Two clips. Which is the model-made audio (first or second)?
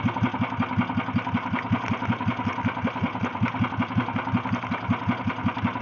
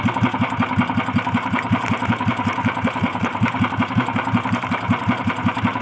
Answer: second